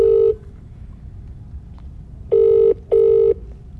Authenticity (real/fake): real